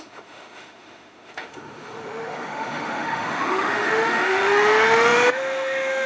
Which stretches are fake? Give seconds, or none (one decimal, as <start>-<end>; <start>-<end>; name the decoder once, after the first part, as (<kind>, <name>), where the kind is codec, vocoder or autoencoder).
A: 0.0-6.1 (autoencoder, DAC-VAE)